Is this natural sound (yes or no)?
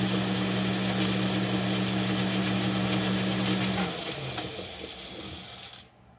yes